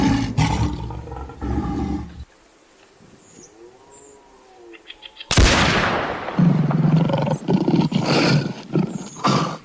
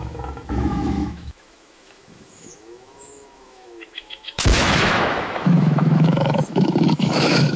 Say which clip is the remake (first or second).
second